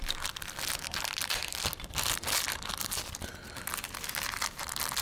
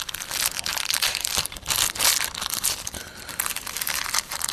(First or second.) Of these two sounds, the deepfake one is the second